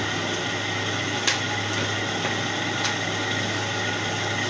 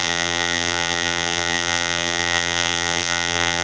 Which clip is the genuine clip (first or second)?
first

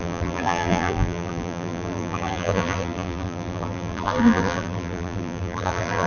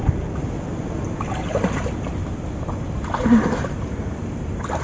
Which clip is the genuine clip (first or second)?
second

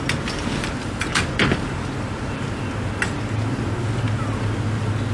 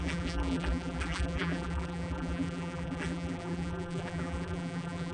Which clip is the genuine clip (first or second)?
first